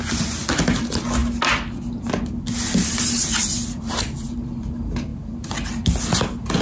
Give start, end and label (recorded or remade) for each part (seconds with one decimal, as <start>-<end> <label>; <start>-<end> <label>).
0.0-6.6 recorded